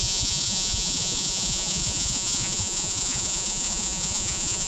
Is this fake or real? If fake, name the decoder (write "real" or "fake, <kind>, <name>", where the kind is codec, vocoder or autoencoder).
fake, vocoder, Vocos